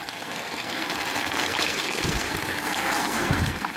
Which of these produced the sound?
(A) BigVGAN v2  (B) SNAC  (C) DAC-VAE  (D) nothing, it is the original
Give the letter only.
B